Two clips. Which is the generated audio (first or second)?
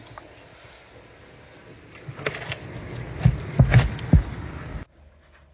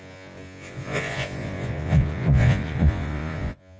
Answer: second